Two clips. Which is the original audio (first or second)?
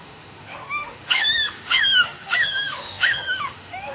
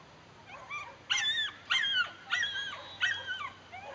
second